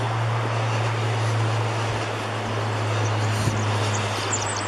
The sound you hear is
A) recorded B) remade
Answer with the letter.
A